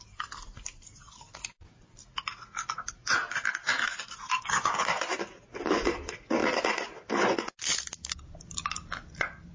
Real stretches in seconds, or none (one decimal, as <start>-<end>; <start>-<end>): 0.0-9.5